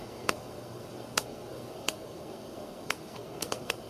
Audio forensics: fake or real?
fake